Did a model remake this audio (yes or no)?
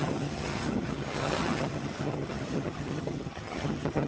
yes